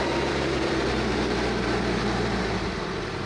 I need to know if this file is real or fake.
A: fake